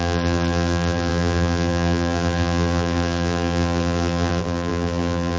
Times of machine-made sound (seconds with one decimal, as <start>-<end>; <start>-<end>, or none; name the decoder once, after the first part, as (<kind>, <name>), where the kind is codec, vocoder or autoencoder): 0.0-5.4 (vocoder, BigVGAN v2)